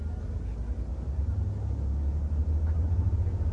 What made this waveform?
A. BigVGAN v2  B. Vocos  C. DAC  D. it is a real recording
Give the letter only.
D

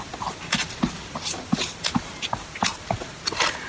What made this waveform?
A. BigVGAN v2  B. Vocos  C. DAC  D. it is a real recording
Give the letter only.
D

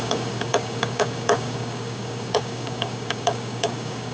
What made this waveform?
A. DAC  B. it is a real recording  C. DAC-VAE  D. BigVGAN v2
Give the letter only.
A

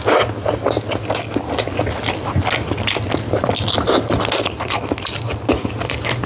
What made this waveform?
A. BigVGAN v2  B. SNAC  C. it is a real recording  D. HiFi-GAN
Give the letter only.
C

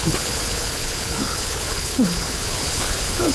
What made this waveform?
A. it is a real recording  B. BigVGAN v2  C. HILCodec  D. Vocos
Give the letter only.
C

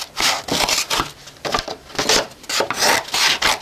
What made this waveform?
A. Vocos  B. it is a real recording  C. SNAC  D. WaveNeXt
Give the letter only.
B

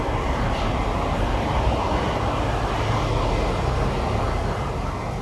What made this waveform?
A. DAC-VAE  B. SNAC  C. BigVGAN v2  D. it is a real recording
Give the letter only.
D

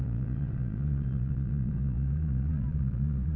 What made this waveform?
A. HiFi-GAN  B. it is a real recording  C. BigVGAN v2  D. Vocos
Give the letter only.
D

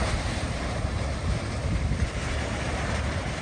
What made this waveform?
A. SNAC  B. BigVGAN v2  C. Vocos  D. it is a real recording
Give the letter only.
B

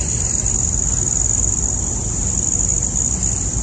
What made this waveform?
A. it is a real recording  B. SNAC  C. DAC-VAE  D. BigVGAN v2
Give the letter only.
A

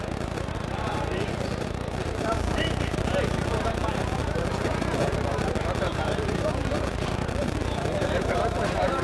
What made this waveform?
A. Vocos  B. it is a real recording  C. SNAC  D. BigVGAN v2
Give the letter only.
D